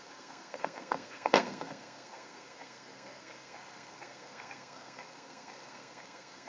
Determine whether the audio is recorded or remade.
remade